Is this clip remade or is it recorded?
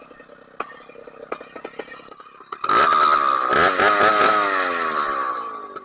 recorded